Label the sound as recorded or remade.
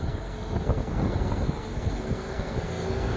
remade